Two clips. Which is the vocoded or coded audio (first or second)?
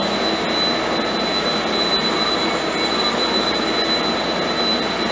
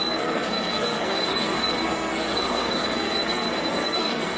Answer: second